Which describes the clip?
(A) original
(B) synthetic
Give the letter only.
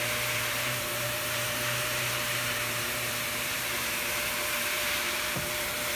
B